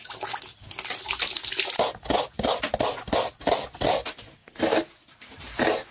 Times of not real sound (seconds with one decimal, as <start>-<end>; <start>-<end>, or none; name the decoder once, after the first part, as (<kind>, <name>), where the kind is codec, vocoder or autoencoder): none